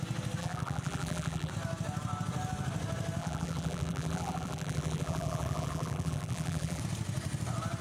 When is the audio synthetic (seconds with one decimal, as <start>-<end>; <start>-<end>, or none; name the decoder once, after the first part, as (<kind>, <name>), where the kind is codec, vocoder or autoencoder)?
0.4-1.5 (vocoder, BigVGAN v2); 3.2-6.8

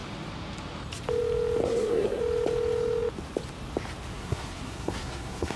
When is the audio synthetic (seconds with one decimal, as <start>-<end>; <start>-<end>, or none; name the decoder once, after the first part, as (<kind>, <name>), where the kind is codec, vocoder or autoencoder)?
1.6-2.2 (codec, SNAC); 4.1-5.6

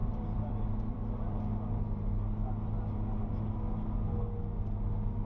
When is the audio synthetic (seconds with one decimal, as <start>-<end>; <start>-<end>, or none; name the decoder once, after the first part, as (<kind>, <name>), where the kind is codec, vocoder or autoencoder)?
0.0-1.4 (vocoder, BigVGAN v2)